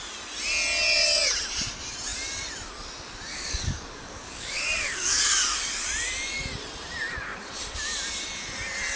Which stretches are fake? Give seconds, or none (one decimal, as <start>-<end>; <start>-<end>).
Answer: 3.3-5.2